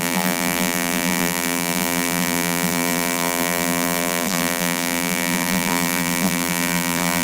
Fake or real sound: fake